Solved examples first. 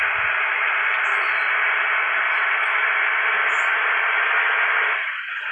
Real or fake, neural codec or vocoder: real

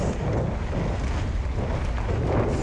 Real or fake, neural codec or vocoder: real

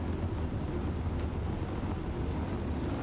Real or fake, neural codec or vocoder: real